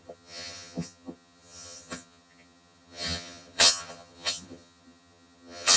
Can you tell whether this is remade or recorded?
remade